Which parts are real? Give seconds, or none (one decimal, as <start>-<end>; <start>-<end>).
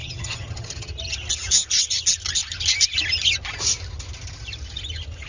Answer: 0.9-5.3